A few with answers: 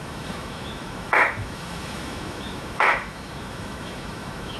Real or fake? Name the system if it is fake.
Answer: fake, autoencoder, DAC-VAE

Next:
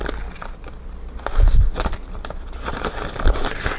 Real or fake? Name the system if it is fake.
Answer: real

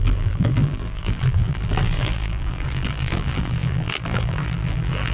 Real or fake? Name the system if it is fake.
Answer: fake, vocoder, BigVGAN v2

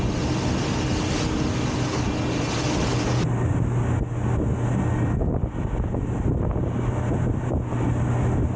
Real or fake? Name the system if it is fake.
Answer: real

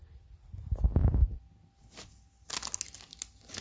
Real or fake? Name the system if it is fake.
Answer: real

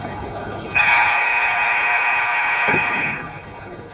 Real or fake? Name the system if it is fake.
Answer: fake, codec, HILCodec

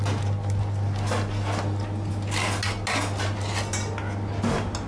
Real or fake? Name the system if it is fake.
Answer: real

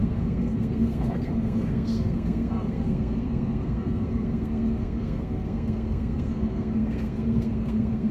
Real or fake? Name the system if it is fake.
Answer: fake, codec, SNAC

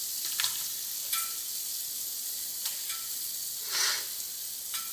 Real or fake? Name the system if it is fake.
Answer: real